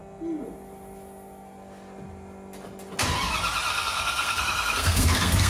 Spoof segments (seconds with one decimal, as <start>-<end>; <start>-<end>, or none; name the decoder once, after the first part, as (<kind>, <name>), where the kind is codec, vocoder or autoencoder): 3.7-5.5 (codec, SNAC)